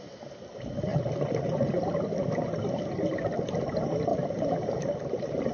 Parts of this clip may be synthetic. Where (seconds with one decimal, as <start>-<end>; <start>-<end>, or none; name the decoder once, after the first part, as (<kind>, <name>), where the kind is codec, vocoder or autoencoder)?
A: 0.9-1.9 (vocoder, BigVGAN v2); 4.1-5.5